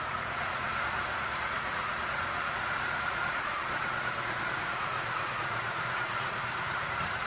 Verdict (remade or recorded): remade